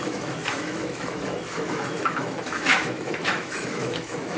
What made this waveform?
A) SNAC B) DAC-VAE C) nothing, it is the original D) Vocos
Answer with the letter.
B